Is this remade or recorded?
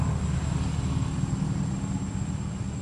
recorded